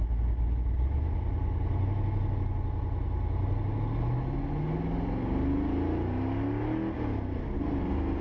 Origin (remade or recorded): recorded